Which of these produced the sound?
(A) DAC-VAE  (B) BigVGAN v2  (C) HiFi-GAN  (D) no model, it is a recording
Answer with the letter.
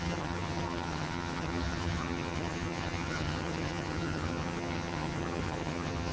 C